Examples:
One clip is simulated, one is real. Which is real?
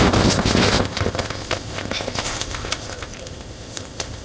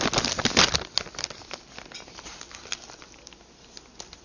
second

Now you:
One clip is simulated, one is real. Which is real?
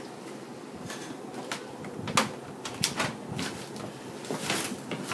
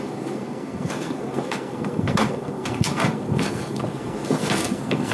first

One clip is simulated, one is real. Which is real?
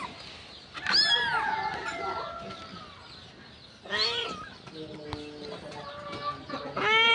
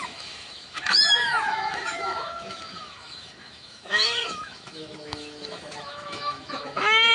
first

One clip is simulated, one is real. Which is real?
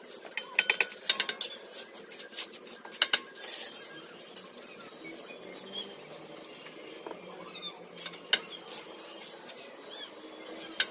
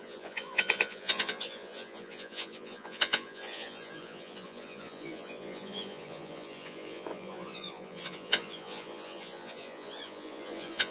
first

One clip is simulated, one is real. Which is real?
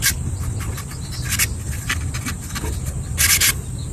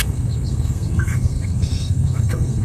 first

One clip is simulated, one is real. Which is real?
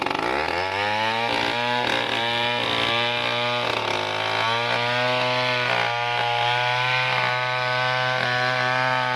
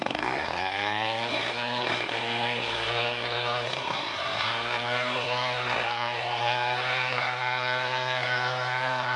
first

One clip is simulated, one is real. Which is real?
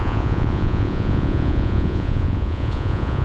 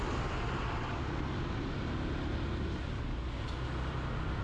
second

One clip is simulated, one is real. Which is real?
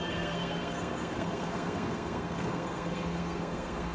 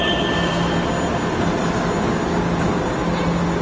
second